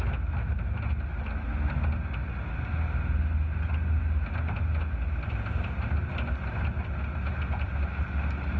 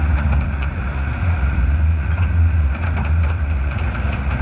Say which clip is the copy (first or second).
second